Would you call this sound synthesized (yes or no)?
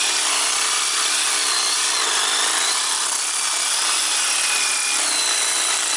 no